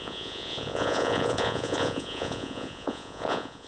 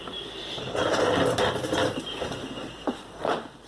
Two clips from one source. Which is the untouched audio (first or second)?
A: second